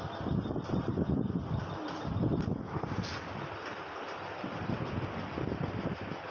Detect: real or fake real